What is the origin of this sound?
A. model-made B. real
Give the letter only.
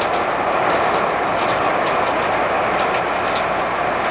B